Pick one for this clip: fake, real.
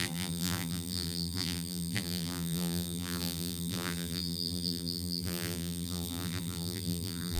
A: fake